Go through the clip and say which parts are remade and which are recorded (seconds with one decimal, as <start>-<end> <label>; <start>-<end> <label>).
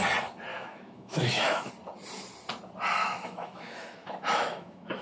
0.0-0.5 recorded; 0.5-1.7 remade; 1.7-3.0 recorded; 3.0-5.0 remade